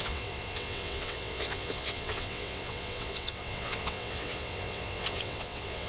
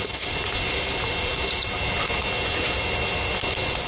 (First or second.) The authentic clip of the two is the second